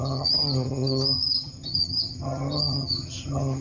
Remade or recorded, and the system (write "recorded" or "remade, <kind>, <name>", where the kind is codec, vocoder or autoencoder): remade, vocoder, HiFi-GAN